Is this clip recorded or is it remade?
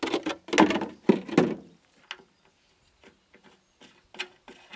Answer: recorded